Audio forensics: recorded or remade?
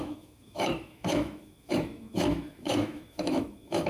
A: remade